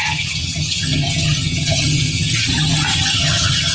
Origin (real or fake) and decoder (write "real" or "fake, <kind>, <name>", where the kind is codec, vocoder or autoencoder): fake, vocoder, HiFi-GAN